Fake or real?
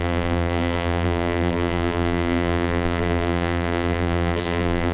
fake